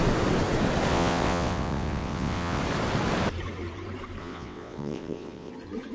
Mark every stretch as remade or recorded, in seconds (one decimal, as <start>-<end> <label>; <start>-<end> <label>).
0.0-0.9 recorded; 0.9-2.6 remade; 2.6-4.2 recorded; 4.2-5.5 remade; 5.5-5.9 recorded